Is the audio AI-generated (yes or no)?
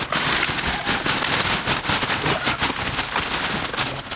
no